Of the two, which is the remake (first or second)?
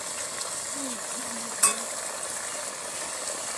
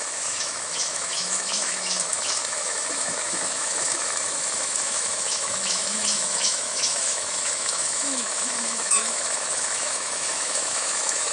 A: second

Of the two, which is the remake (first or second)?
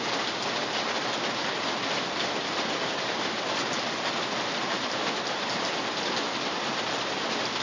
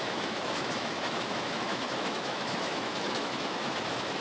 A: second